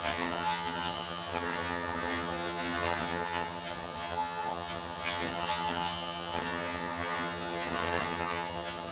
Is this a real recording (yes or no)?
no